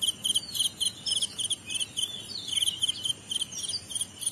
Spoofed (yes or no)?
yes